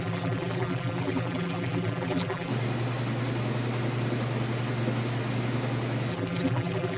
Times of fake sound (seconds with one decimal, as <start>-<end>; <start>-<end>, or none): 0.0-2.5; 6.1-7.0